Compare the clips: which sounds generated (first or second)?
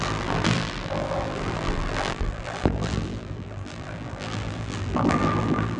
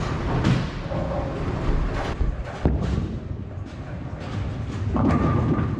first